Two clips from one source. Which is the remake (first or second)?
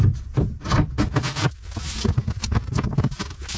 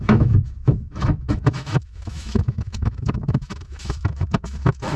second